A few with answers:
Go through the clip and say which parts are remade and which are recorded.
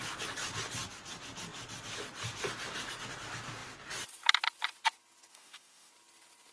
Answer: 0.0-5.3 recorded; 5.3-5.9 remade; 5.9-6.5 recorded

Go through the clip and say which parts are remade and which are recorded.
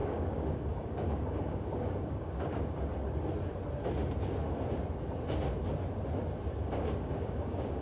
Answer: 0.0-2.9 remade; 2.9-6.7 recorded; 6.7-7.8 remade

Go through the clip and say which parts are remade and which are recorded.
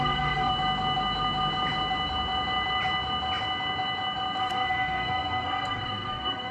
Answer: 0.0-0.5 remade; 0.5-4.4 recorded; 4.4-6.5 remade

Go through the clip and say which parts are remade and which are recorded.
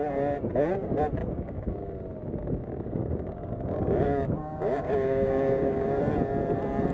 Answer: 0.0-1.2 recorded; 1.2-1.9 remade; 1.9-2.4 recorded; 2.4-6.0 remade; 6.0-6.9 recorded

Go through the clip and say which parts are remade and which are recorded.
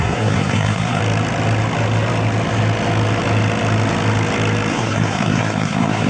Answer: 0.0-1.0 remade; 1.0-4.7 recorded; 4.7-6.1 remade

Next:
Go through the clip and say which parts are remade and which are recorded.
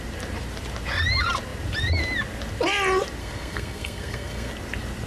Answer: 0.0-3.2 recorded; 3.2-4.5 remade; 4.5-5.1 recorded